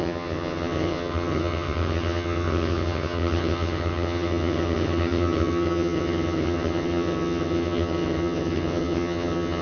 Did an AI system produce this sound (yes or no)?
yes